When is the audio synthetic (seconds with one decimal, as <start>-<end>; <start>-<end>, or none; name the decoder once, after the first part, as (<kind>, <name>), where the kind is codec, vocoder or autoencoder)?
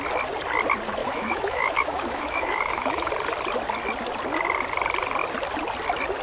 1.0-3.1 (autoencoder, DAC-VAE)